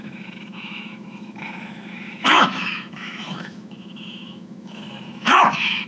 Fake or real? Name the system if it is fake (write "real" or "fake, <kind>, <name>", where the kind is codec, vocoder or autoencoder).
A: fake, autoencoder, DAC-VAE